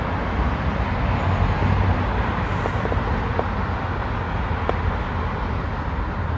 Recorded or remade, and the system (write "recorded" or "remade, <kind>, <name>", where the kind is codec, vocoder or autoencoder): recorded